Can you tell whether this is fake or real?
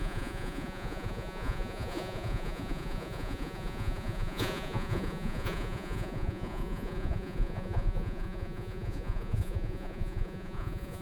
fake